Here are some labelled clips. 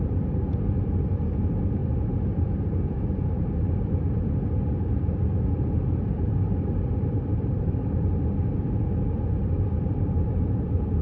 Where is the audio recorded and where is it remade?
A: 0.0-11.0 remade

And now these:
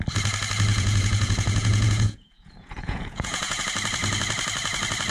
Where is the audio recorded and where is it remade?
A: 0.0-0.7 recorded; 0.7-3.6 remade; 3.6-5.1 recorded

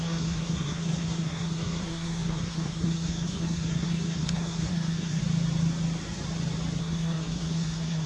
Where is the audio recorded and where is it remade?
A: 0.0-5.2 remade; 5.2-6.8 recorded; 6.8-8.1 remade

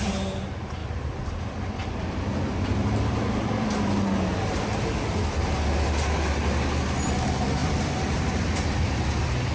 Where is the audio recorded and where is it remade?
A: 0.0-0.8 recorded; 0.8-5.2 remade; 5.2-7.6 recorded; 7.6-8.3 remade; 8.3-9.5 recorded

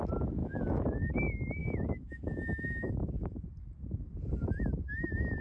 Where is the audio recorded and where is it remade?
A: 0.0-0.4 recorded; 0.4-1.1 remade; 1.1-1.6 recorded; 1.6-3.4 remade; 3.4-5.4 recorded